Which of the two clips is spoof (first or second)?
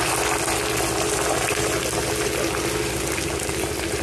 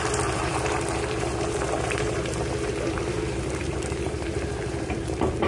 second